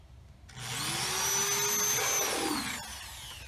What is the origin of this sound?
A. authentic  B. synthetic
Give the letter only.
A